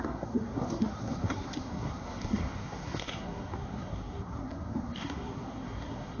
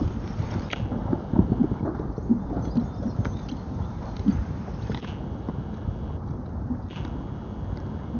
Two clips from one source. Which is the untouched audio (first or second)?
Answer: second